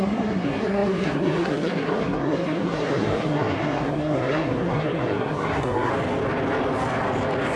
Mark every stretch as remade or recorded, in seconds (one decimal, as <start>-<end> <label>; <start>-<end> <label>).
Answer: 0.0-5.9 remade; 5.9-7.6 recorded